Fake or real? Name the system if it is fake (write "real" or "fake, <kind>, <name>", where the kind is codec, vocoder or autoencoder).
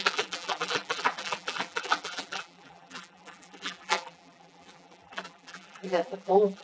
fake, vocoder, BigVGAN v2